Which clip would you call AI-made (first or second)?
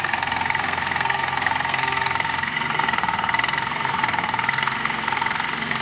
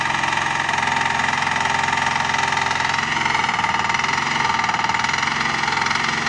first